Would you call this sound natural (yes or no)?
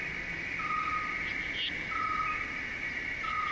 yes